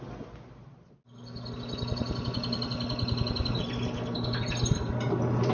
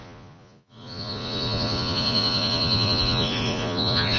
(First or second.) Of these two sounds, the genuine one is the first